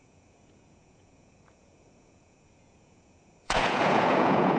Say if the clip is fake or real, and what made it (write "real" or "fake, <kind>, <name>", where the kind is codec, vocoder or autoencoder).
fake, vocoder, Vocos